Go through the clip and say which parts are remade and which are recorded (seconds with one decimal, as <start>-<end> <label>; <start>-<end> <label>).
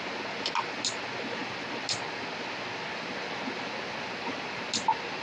0.0-5.2 recorded